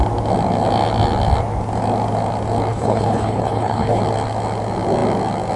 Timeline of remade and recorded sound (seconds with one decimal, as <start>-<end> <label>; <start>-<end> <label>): 0.0-2.7 recorded; 2.7-4.0 remade; 4.0-5.6 recorded